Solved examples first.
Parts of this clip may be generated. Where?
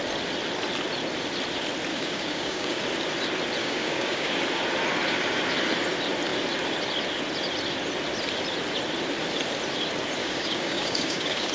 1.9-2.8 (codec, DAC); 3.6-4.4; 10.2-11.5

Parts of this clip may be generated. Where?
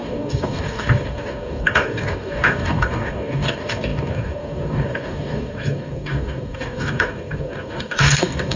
0.0-8.6 (codec, DAC)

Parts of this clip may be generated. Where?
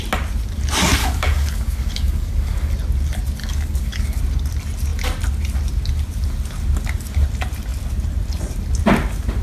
1.0-2.7 (codec, DAC); 3.4-4.2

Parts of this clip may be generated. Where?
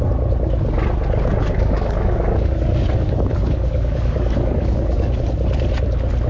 1.4-5.2 (codec, DAC)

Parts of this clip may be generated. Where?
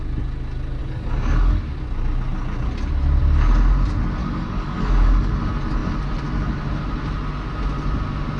0.8-1.6 (codec, DAC); 4.2-5.3